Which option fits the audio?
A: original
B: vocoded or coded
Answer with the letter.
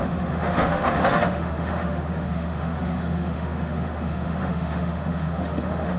B